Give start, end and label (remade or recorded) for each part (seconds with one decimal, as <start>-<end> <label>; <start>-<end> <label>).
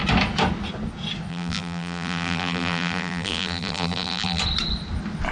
0.0-1.3 recorded; 1.3-4.4 remade; 4.4-5.3 recorded